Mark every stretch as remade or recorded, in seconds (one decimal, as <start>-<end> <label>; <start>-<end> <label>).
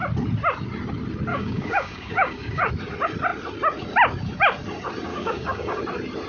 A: 0.0-1.3 recorded; 1.3-2.7 remade; 2.7-5.1 recorded; 5.1-5.8 remade; 5.8-6.3 recorded